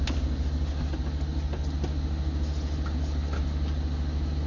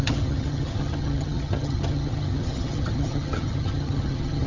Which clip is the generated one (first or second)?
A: second